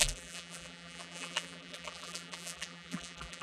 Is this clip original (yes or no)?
no